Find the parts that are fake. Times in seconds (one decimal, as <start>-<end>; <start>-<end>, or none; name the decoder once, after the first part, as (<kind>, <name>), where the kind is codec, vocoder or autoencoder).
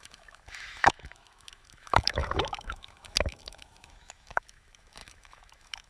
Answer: 0.0-5.9 (autoencoder, DAC-VAE)